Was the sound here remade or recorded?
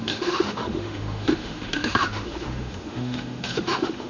remade